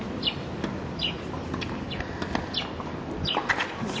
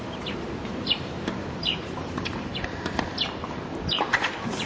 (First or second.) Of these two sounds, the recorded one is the first